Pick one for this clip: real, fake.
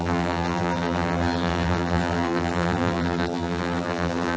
fake